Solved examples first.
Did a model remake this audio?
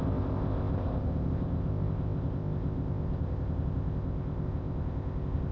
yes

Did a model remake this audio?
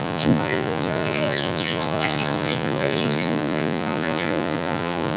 yes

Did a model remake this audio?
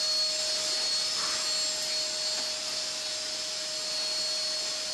no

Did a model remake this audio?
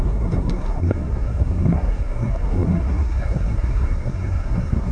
yes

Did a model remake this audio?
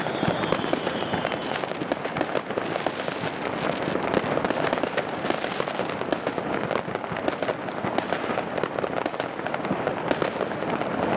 no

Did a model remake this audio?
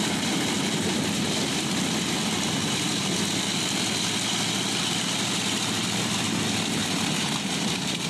no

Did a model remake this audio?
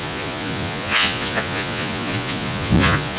yes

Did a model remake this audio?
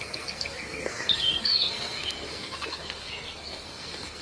yes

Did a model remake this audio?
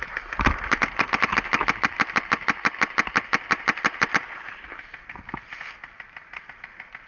no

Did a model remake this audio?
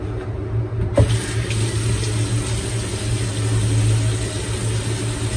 no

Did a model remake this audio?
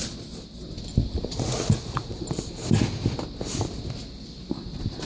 no